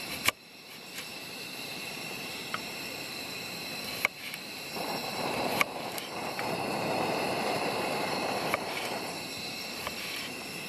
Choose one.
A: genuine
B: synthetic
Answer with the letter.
B